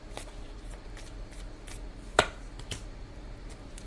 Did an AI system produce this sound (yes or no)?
no